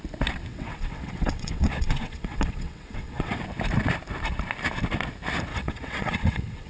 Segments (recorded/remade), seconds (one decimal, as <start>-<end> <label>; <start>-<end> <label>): 0.0-0.5 recorded; 0.5-3.4 remade; 3.4-5.5 recorded; 5.5-6.7 remade